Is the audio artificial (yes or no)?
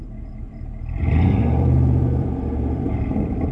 yes